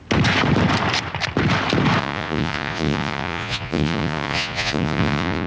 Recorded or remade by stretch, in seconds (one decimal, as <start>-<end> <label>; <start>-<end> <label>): 0.0-2.0 recorded; 2.0-5.5 remade